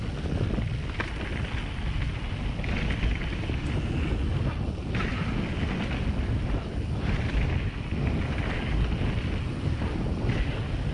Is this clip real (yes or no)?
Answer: yes